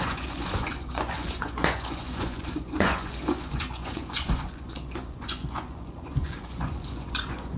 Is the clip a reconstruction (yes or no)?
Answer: yes